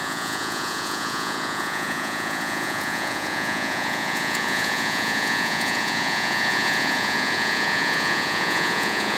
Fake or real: fake